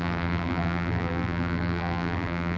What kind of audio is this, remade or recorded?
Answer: remade